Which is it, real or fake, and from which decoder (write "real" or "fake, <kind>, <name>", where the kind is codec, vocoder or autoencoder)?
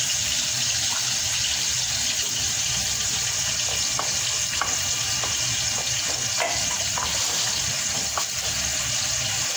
real